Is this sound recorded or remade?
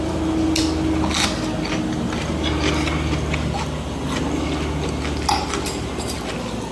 recorded